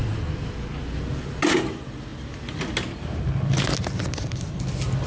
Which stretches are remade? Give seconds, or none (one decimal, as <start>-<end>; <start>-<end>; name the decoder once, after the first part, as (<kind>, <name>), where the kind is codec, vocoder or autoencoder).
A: none